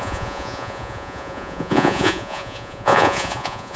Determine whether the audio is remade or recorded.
remade